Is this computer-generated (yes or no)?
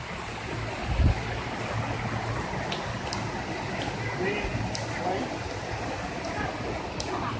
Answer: no